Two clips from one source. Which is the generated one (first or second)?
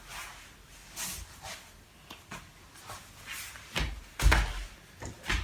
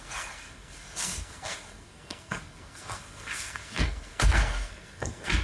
second